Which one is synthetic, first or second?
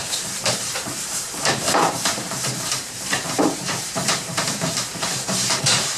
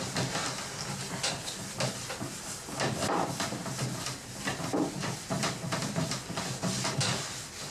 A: first